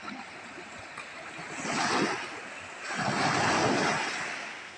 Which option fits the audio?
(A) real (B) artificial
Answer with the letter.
A